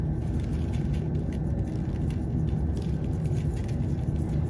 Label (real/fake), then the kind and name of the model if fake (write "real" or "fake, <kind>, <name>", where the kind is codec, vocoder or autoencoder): real